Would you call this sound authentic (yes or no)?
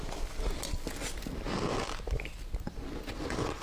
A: yes